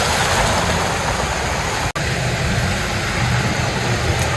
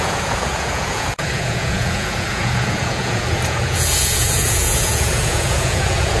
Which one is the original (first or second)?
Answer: first